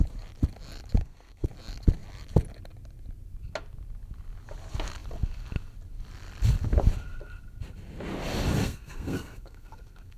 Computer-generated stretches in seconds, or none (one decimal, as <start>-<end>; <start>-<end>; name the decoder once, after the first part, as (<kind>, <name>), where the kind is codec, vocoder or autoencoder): 1.0-1.5 (codec, SNAC); 8.6-10.2